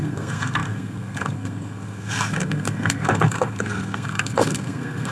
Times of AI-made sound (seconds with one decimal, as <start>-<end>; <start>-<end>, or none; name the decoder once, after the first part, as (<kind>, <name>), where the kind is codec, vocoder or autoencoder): 0.0-5.1 (codec, SNAC)